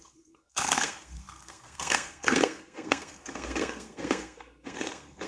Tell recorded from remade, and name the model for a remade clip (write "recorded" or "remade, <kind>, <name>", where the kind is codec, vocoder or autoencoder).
remade, codec, SNAC